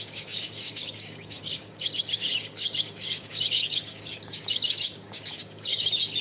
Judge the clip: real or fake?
fake